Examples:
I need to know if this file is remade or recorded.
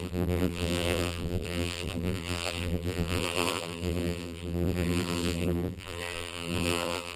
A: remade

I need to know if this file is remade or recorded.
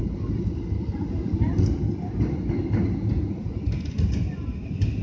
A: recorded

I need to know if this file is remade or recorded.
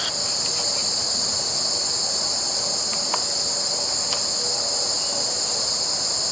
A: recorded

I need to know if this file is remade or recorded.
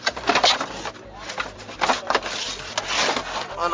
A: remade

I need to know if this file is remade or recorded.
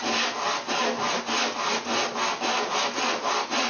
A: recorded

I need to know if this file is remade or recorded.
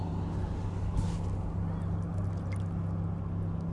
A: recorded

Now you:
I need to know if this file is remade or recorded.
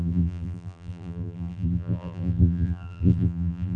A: remade